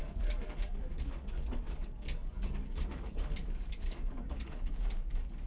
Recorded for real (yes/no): no